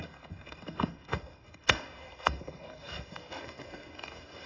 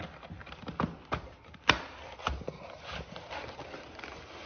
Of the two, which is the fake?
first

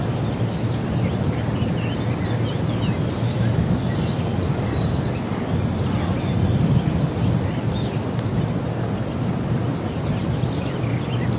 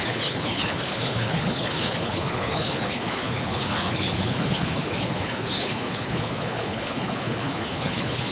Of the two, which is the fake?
second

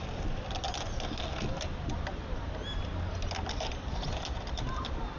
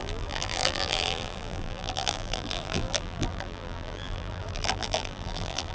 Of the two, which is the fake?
second